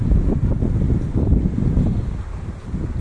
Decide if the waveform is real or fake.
real